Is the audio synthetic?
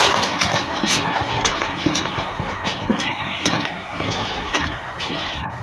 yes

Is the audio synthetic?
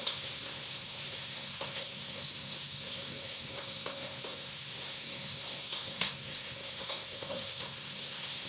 yes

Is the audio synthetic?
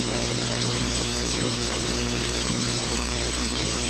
yes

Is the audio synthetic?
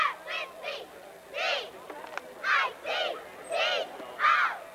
no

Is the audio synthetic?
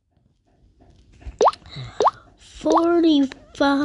no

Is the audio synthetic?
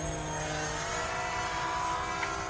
no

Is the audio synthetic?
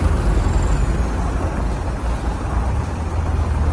no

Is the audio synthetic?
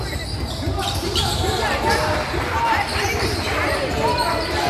no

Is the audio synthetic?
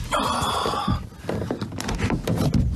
no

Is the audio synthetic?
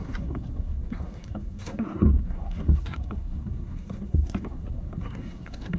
yes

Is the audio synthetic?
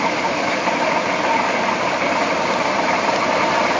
no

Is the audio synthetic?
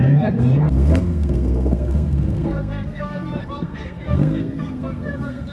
yes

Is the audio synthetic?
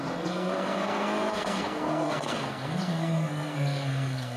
yes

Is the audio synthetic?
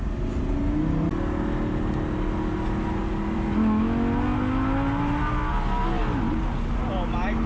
no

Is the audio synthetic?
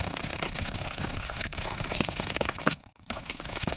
yes